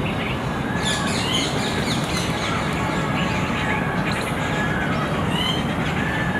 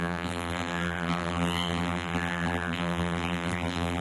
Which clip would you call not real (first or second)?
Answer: second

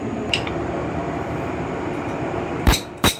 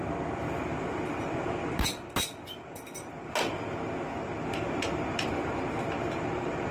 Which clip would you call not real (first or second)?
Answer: first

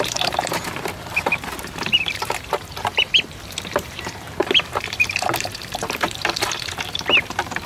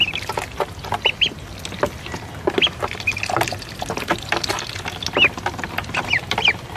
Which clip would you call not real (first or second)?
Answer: first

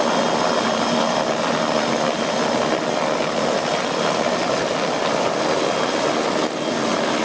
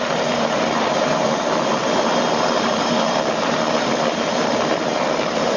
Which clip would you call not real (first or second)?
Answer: second